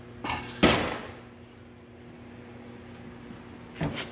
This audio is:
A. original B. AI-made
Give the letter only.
A